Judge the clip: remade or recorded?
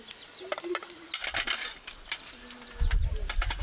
recorded